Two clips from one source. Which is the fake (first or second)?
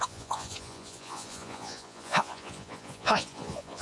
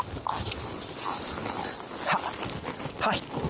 first